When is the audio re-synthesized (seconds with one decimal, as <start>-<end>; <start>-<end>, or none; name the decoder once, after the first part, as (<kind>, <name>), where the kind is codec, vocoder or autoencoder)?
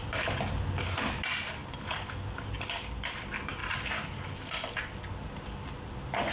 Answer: none